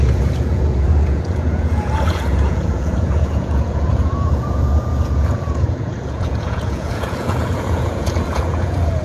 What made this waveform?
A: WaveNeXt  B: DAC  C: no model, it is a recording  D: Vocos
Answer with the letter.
D